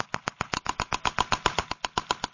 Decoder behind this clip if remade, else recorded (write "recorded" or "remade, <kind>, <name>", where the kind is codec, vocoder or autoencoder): recorded